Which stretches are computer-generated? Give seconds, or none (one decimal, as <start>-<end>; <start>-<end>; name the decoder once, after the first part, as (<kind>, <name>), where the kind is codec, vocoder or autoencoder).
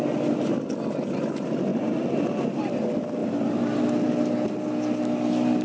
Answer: 1.7-2.5 (vocoder, BigVGAN v2); 3.2-3.8